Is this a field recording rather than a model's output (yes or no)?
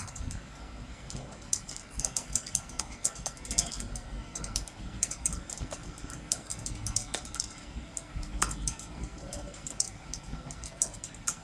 no